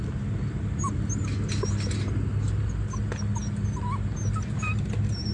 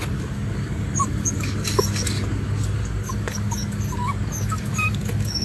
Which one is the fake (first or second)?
second